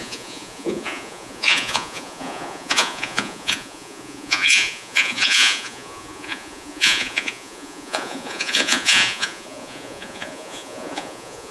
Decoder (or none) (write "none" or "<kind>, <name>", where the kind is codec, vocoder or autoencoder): vocoder, Vocos